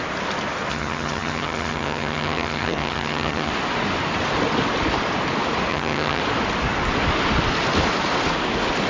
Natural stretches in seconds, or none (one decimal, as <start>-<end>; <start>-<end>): 0.0-0.7; 3.5-5.7; 6.2-8.9